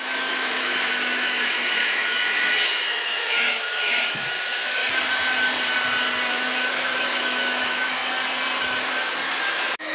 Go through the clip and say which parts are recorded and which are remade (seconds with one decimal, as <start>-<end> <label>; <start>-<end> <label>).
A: 0.0-4.8 remade; 4.8-6.3 recorded; 6.3-8.0 remade; 8.0-8.6 recorded; 8.6-9.9 remade